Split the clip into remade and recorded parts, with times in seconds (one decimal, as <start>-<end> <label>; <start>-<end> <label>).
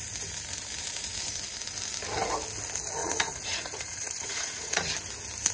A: 0.0-3.0 recorded; 3.0-4.9 remade; 4.9-5.5 recorded